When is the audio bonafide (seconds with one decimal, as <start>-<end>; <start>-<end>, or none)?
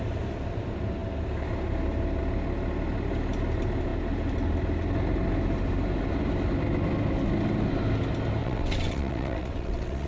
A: 0.0-8.4